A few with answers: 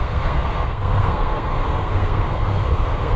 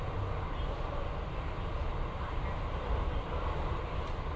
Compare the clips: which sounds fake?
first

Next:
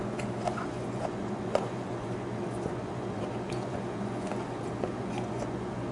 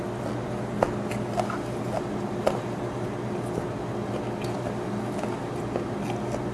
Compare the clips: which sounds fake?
first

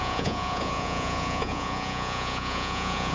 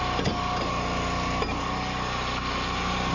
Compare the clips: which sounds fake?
first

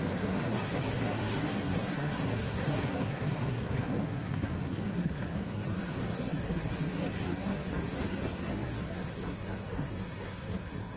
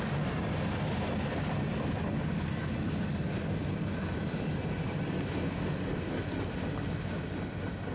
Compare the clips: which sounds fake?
first